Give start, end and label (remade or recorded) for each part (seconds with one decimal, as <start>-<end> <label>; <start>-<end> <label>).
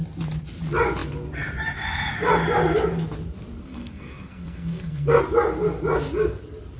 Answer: 0.0-3.6 recorded; 3.6-5.2 remade; 5.2-6.8 recorded